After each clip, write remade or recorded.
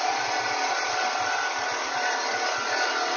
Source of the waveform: recorded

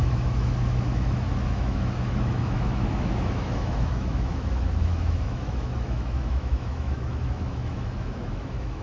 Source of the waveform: remade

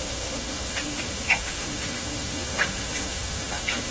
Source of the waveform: remade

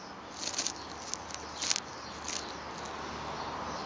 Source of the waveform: recorded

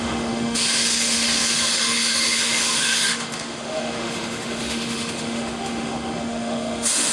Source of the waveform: remade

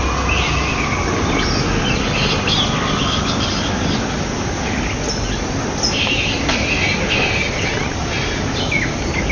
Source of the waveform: recorded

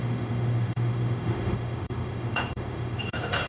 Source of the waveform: remade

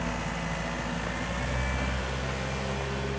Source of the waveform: recorded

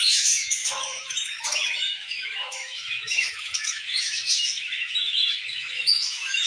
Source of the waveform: remade